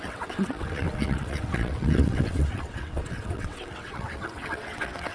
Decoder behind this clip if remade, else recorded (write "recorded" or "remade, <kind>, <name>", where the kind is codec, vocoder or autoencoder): remade, vocoder, WaveNeXt